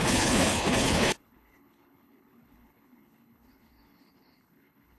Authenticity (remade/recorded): remade